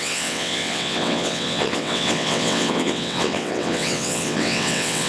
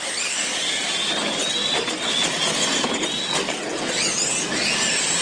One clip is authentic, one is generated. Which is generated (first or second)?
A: first